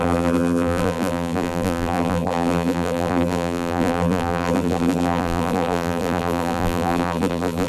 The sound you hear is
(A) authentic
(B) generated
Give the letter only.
B